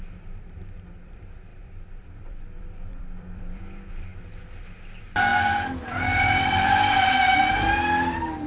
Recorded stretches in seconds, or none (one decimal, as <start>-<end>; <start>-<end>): 0.0-1.5; 3.6-5.3; 7.4-8.5